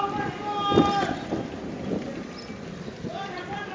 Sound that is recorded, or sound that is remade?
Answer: recorded